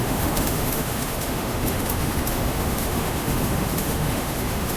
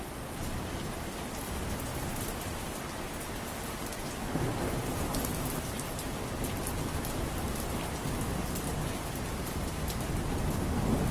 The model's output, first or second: first